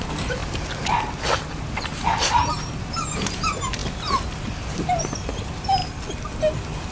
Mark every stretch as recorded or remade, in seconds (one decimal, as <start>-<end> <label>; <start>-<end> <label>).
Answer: 0.0-6.9 recorded